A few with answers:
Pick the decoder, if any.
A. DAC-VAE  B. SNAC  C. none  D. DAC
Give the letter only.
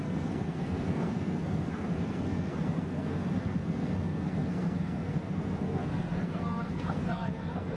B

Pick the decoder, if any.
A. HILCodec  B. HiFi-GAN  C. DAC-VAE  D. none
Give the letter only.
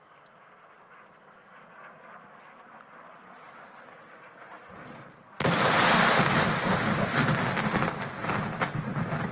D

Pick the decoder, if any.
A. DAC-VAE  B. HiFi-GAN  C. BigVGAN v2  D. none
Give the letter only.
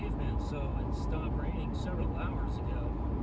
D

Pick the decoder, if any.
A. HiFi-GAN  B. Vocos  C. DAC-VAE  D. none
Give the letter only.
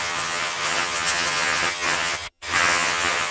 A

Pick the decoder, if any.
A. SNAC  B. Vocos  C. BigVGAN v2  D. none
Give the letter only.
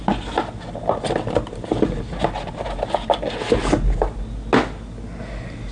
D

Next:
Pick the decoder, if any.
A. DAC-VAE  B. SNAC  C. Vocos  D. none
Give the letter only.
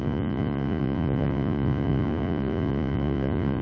C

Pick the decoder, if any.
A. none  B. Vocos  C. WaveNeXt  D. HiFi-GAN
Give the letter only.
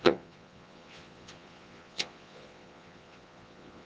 B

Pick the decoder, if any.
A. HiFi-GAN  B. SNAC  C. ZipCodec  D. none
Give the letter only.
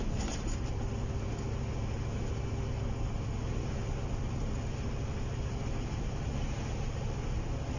D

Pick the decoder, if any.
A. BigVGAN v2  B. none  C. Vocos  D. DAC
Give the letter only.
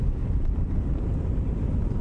B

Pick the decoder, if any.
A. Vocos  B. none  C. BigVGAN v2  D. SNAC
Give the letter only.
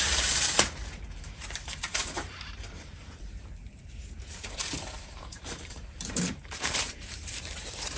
C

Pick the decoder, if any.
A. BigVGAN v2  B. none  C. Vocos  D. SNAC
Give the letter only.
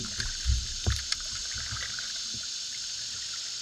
B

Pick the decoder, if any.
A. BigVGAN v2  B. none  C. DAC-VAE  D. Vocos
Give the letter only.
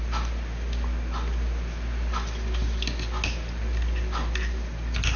B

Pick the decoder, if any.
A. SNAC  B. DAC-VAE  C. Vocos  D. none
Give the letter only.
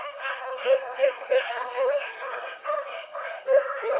A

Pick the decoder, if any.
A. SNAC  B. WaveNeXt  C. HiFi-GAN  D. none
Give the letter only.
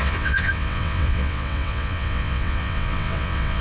B